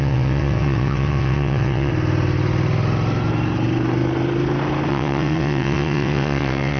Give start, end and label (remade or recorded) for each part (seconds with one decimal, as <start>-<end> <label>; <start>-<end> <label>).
0.0-1.9 remade; 1.9-4.9 recorded; 4.9-6.8 remade